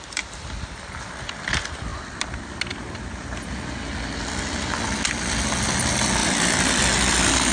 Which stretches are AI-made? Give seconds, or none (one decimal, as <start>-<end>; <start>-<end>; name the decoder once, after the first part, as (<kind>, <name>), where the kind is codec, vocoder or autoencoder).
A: none